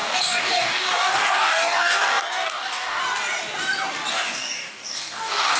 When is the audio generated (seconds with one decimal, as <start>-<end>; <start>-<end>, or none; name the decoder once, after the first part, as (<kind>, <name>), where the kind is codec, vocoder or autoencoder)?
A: 0.0-3.0 (codec, DAC); 4.1-5.6